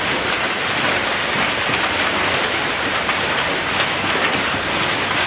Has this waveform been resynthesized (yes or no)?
no